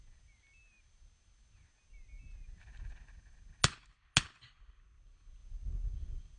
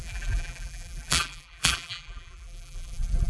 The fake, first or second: second